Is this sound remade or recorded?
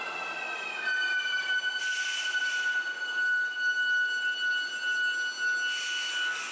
recorded